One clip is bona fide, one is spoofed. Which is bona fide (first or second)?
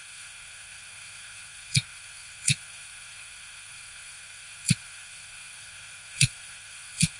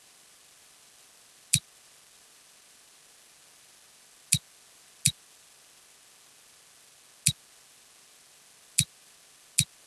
second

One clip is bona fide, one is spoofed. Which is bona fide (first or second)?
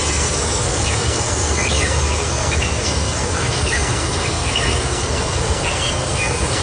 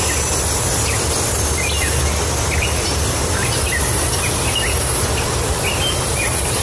second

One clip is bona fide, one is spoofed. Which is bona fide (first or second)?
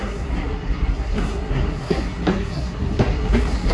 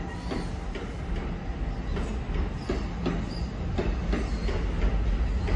second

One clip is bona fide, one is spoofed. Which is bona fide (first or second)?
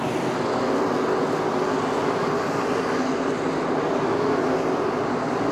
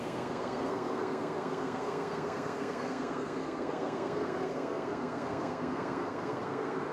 first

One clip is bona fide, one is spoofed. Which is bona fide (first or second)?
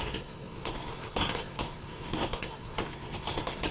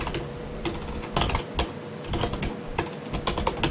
second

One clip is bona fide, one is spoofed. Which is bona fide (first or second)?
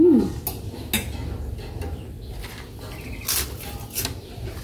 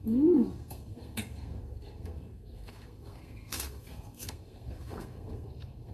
first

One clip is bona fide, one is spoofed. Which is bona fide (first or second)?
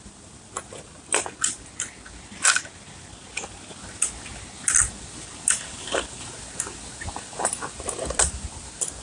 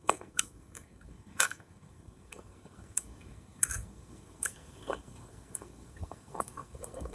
first